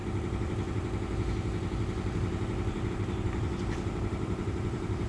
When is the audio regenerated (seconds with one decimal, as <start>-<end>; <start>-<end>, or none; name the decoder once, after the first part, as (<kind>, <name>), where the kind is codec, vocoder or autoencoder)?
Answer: 2.9-5.1 (vocoder, BigVGAN v2)